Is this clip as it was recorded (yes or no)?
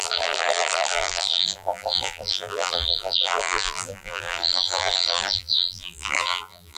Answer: no